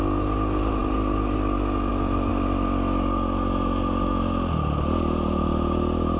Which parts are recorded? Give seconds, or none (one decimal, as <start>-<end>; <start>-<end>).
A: 0.0-6.2